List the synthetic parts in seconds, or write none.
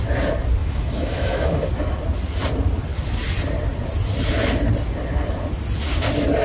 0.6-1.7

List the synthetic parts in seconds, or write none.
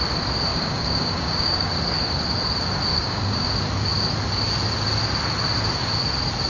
0.5-1.7; 2.9-3.5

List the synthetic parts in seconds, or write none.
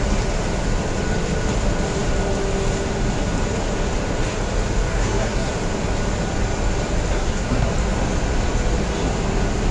4.9-5.5; 7.1-7.7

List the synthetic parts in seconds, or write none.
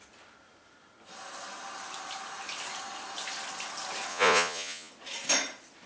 4.1-4.9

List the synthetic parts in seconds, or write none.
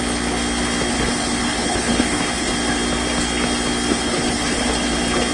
0.9-2.5; 3.9-4.7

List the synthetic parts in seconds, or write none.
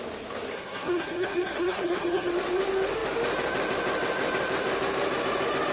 0.5-2.3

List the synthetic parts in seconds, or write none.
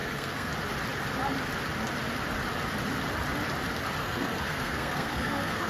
0.0-0.5; 4.0-5.7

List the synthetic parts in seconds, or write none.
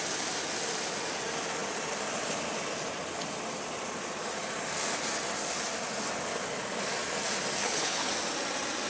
7.6-8.1